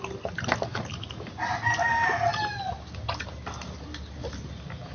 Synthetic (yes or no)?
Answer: no